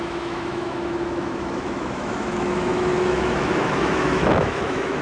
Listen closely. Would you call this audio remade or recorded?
remade